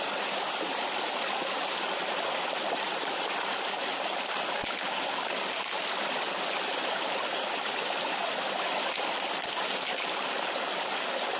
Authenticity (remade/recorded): recorded